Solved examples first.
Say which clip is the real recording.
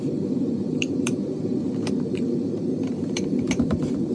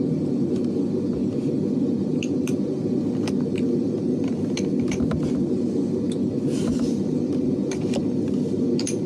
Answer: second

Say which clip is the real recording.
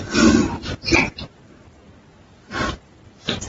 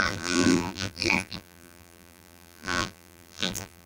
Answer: first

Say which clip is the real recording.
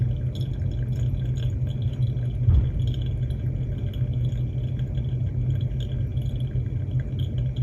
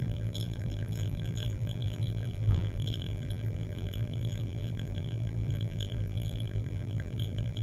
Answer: first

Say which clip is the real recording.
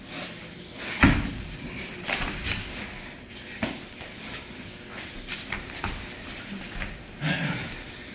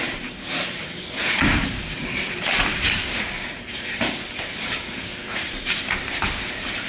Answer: first